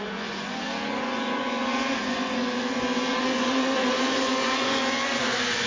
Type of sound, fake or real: fake